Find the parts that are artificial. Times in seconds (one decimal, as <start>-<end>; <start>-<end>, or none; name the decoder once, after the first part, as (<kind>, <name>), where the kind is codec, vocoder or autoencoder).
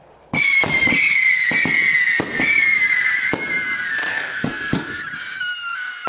4.1-5.0 (codec, SNAC)